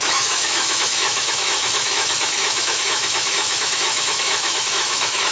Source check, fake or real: fake